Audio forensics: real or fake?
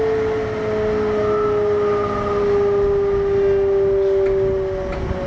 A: real